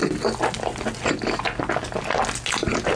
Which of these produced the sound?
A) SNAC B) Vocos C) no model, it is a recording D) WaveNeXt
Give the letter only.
C